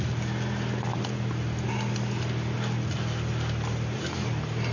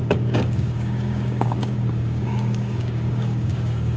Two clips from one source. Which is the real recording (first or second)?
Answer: first